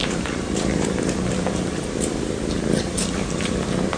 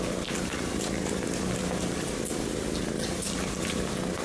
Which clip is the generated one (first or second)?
first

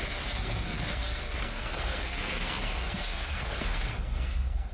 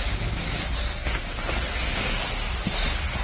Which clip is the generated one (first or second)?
first